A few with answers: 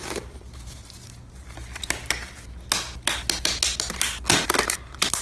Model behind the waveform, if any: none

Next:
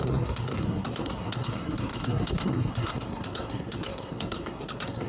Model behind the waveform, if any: codec, SNAC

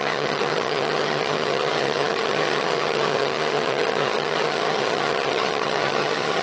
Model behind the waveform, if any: vocoder, HiFi-GAN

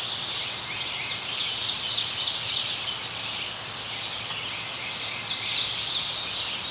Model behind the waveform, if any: none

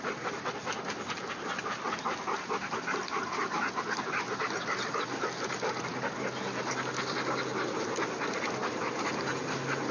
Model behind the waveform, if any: none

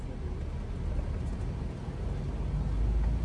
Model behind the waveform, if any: none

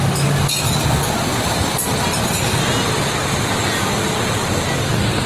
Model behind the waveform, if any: none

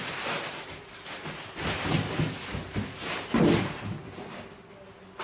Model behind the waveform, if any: none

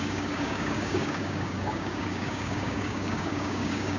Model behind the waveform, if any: codec, DAC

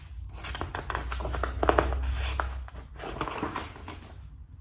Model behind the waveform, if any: none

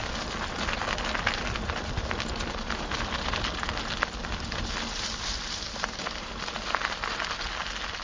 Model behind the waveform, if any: none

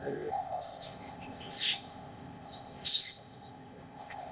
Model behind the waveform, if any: codec, ZipCodec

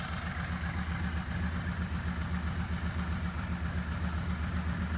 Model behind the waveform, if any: none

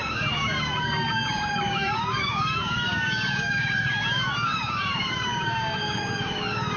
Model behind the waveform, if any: codec, DAC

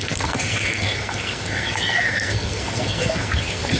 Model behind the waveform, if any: codec, SNAC